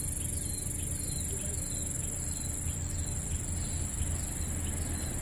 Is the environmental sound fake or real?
real